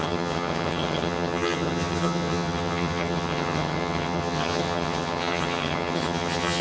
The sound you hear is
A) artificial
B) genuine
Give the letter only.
A